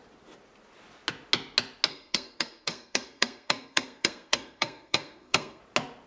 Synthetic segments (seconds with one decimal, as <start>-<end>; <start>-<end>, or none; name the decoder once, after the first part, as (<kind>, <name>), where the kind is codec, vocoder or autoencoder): 1.9-5.6 (codec, SNAC)

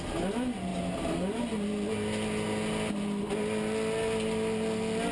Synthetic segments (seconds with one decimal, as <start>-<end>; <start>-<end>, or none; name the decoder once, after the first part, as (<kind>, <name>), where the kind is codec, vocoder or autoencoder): none

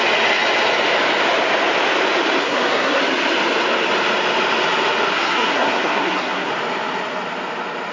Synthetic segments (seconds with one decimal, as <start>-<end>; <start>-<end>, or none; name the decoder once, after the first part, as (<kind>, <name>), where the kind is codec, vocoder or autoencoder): 2.4-3.0 (codec, SNAC); 5.1-6.5

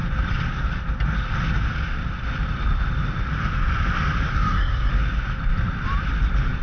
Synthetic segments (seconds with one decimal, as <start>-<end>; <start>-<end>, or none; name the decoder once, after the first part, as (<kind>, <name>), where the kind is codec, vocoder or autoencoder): 4.3-4.9 (codec, SNAC)

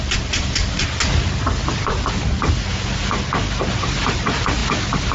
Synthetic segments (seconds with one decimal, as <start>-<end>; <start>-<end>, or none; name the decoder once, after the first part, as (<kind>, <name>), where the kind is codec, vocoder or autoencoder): none